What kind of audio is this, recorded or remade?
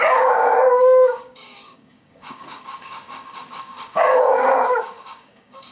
remade